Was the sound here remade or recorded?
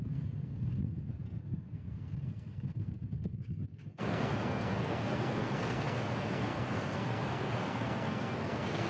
remade